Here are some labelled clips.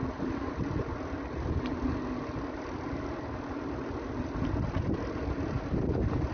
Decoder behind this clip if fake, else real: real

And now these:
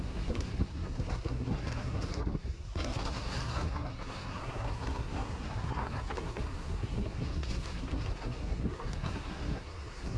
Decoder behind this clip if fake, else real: fake, codec, SNAC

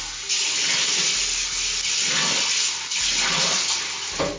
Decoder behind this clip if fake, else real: real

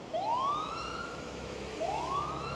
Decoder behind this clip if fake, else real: fake, autoencoder, DAC-VAE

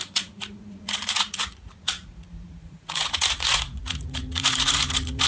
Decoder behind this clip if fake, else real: fake, vocoder, Vocos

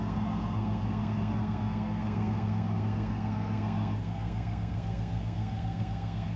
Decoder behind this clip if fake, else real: fake, codec, SNAC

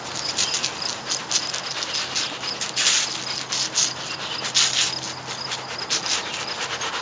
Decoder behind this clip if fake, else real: real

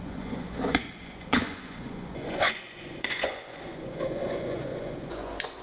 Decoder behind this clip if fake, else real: fake, vocoder, Vocos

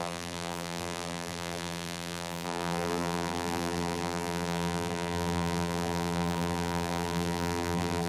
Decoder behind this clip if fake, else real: fake, vocoder, BigVGAN v2